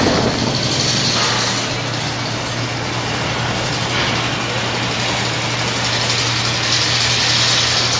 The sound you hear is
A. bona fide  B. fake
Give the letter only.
A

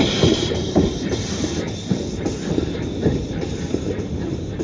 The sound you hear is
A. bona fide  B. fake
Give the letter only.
B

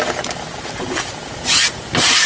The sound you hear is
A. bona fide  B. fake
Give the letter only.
A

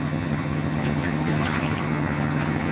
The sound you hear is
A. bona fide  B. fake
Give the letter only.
B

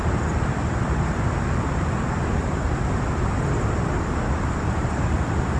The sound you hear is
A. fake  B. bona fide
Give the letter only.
B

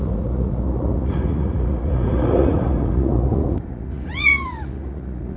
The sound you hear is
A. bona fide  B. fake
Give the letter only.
B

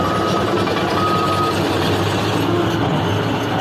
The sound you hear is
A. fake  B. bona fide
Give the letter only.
B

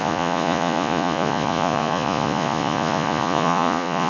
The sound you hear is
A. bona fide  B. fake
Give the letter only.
B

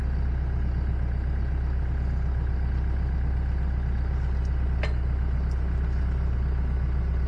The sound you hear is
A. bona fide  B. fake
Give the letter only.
A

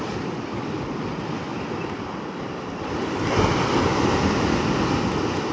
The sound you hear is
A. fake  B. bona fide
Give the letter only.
B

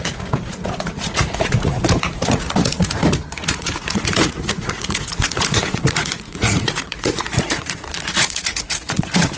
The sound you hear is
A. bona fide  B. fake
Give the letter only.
B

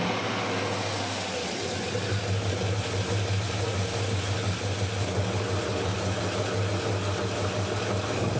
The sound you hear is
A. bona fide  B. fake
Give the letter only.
A